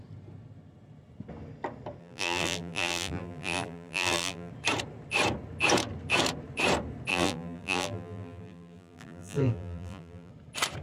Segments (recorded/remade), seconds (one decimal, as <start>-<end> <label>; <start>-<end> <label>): 0.0-2.0 recorded; 2.0-4.5 remade; 4.5-7.1 recorded; 7.1-10.3 remade; 10.3-10.8 recorded